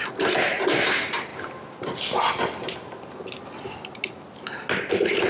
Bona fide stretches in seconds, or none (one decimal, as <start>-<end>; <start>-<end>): 0.0-5.3